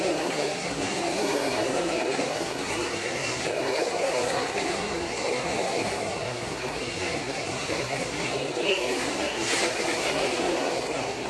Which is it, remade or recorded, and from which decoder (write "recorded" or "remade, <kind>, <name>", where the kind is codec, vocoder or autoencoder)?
remade, codec, SNAC